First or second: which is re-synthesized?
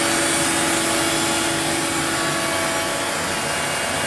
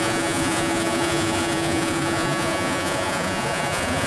second